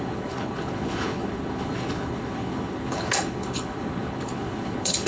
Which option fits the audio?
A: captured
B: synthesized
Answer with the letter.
B